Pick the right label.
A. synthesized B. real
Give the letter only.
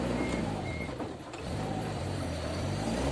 A